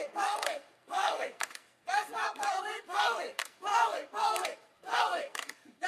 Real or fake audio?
fake